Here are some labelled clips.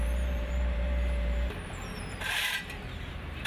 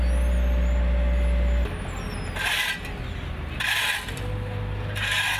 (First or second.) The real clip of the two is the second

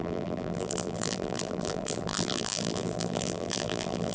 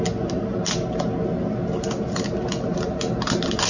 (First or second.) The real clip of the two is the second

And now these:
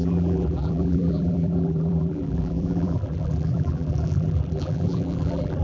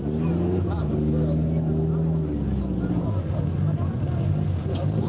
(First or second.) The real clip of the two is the second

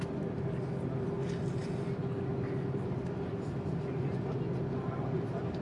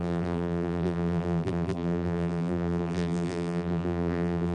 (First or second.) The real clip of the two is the first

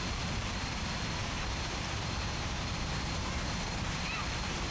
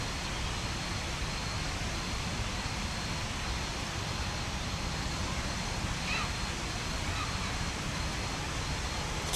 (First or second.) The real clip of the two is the second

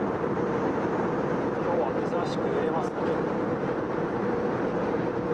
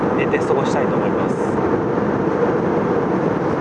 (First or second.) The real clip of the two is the second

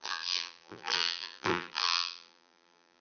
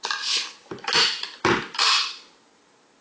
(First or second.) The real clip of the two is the second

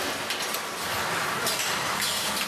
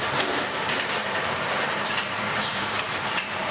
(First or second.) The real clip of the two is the first